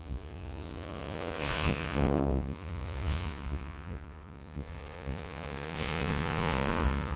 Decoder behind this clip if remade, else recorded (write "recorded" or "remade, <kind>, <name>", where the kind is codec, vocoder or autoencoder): remade, vocoder, Vocos